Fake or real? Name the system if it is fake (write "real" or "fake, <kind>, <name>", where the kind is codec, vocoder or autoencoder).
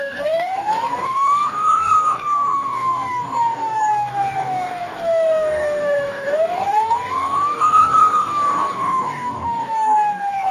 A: fake, codec, DAC